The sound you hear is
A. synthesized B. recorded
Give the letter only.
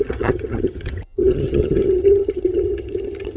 A